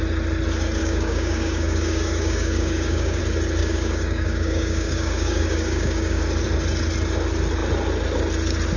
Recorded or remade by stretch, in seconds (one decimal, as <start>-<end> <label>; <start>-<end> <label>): 0.0-0.8 recorded; 0.8-3.2 remade; 3.2-3.6 recorded; 3.6-6.2 remade; 6.2-8.8 recorded